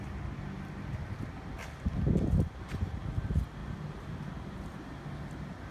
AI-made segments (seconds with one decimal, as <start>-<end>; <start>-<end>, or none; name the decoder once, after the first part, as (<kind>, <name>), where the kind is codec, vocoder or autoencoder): 3.6-5.0 (vocoder, BigVGAN v2)